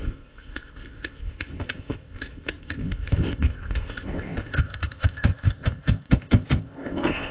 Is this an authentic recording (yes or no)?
no